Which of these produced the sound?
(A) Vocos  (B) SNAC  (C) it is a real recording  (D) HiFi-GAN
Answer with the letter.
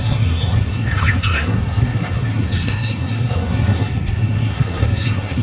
B